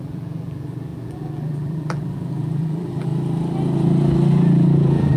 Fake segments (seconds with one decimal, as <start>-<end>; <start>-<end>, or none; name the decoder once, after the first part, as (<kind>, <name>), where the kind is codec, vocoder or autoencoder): 0.0-3.1 (vocoder, BigVGAN v2); 4.3-5.2